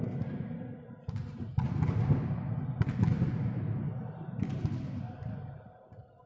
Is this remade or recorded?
recorded